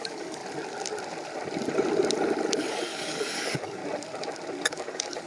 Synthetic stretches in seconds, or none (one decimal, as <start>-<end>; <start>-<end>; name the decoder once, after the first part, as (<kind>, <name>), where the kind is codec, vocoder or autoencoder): 0.0-0.4 (codec, DAC); 2.7-3.8; 4.6-5.3